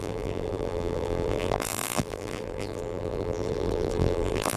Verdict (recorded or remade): remade